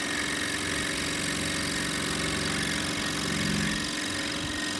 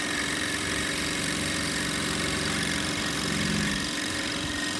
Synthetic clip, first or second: second